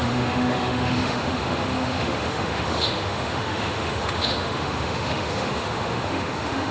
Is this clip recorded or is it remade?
remade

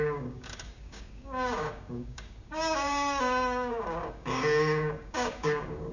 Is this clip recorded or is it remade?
remade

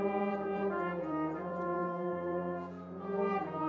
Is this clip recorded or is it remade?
remade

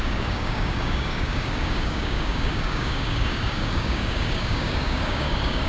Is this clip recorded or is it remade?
remade